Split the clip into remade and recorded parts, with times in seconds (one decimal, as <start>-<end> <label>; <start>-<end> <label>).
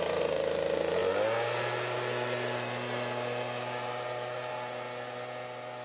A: 0.0-5.8 recorded